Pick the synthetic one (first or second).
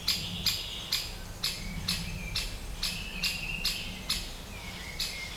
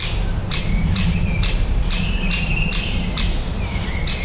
second